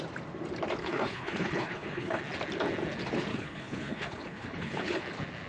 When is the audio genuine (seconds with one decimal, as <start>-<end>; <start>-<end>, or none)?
0.0-0.8; 2.2-3.3; 5.0-5.5